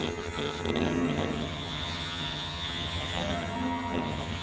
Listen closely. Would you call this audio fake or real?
fake